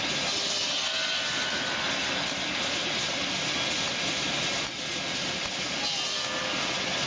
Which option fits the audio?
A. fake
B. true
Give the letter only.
B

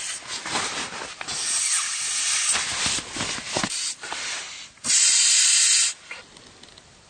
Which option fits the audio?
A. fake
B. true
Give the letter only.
B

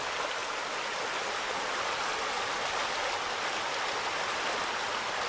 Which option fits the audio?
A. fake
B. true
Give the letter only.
B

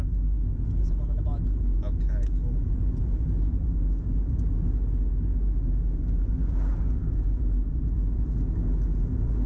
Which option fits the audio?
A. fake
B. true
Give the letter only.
B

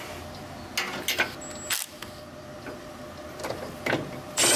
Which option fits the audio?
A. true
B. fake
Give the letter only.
A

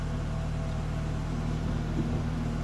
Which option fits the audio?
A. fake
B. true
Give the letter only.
B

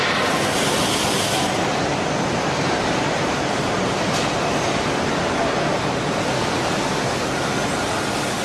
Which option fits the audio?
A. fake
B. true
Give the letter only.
B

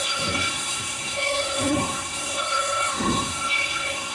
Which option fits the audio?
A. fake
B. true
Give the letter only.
A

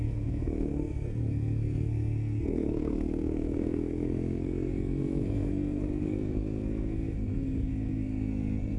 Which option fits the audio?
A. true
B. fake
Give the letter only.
B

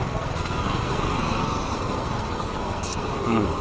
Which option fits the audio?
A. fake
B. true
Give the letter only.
A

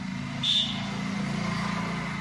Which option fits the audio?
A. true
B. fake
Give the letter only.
A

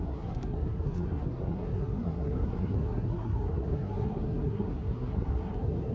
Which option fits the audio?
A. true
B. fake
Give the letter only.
B